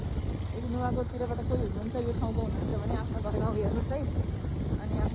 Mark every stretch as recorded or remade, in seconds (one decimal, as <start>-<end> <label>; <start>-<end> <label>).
0.0-5.1 recorded